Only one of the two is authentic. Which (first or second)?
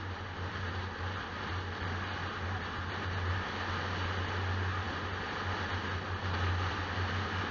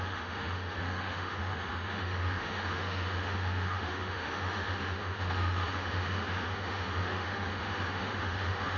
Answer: first